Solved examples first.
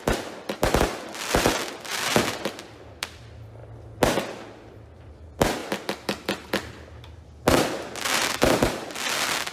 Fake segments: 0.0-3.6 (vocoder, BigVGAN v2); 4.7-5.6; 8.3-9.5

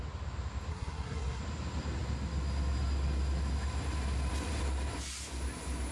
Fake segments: 0.7-1.4 (codec, SNAC)

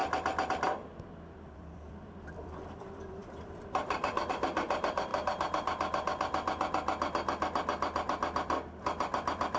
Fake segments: 0.0-5.1 (vocoder, BigVGAN v2); 8.8-9.6

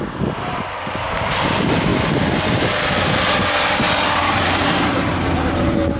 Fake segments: 4.2-6.0 (vocoder, BigVGAN v2)

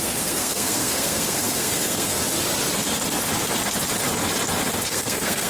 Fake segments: 0.0-2.2 (codec, SNAC); 4.9-5.5

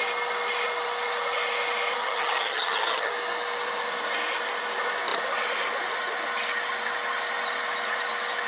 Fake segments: 2.0-3.1 (vocoder, HiFi-GAN)